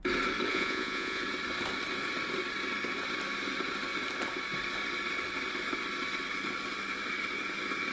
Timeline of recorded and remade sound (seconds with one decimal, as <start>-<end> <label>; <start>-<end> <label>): 0.0-0.5 recorded; 0.5-1.2 remade; 1.2-7.9 recorded